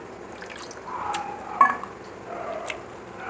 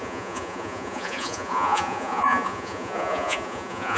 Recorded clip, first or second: first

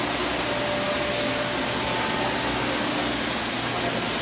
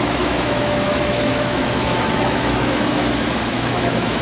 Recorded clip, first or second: first